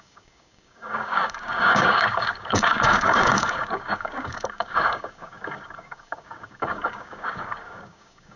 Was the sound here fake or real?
fake